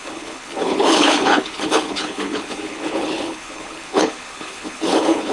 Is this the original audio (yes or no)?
no